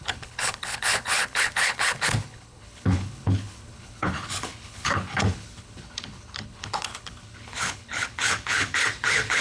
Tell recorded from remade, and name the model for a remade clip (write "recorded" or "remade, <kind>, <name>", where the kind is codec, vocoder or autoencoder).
remade, codec, HILCodec